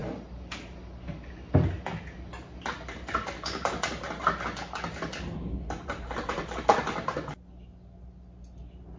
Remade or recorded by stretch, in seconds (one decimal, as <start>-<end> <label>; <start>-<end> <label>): 0.0-9.0 recorded